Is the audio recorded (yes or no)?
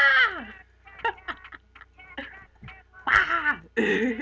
yes